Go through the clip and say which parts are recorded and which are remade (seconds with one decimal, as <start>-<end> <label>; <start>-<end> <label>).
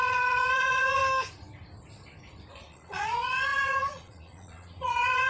0.0-1.0 remade; 1.0-2.5 recorded; 2.5-5.3 remade